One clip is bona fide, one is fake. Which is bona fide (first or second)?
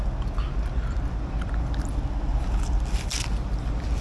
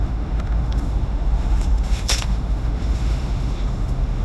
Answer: first